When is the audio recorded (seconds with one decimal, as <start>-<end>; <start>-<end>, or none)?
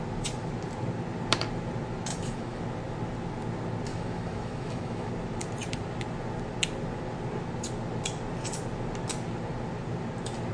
0.0-2.1; 2.6-3.9; 5.1-10.5